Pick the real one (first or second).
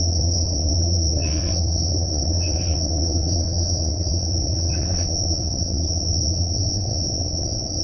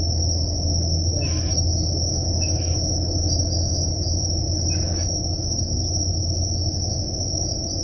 second